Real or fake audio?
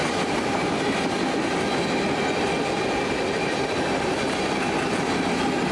real